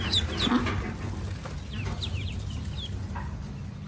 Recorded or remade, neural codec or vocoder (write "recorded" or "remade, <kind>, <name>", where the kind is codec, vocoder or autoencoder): recorded